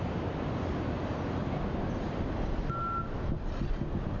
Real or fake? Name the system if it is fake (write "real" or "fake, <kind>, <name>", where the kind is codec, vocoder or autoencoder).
real